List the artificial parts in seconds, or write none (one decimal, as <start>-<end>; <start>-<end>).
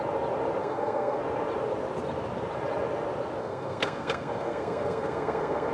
0.6-1.2; 3.4-5.7